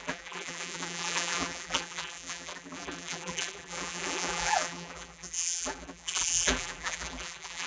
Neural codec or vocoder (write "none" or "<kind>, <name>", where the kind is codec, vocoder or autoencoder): vocoder, BigVGAN v2